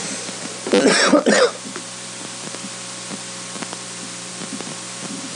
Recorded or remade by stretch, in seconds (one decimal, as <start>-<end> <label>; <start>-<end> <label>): 0.0-5.4 recorded